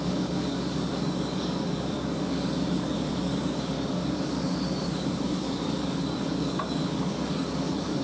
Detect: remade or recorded remade